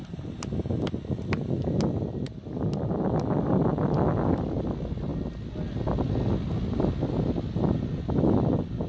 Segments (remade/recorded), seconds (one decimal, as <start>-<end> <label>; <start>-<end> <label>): 0.0-8.9 recorded